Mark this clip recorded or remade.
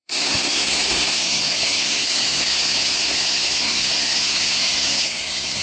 remade